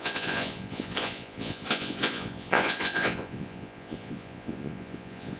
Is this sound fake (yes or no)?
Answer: yes